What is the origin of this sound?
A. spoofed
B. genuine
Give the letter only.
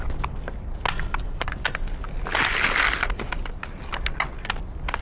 B